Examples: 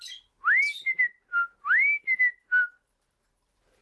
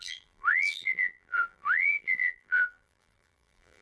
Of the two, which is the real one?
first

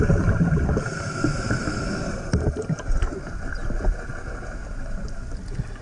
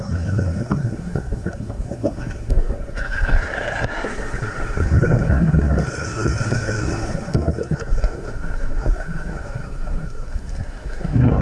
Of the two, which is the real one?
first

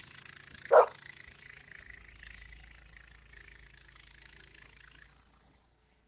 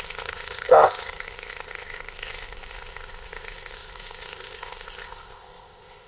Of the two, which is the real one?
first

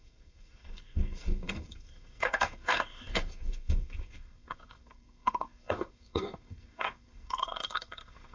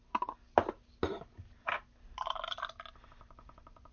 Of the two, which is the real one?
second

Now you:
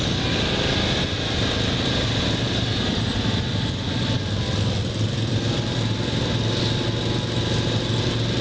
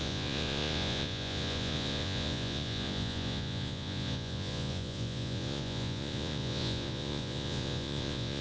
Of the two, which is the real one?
first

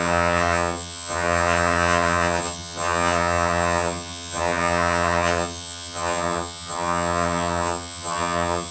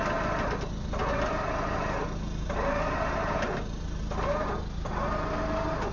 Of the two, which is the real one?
second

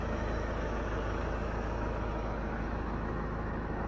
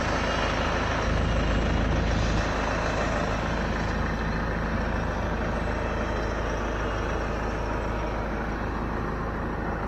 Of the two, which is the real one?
second